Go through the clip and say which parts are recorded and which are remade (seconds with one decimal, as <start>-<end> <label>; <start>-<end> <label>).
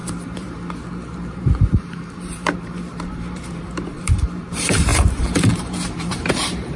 0.0-6.8 remade